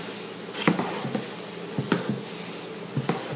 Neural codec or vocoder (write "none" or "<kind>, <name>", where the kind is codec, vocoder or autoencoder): none